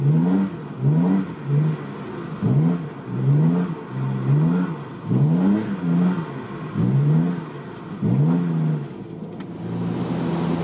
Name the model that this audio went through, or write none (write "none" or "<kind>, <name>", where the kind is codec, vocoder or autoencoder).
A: none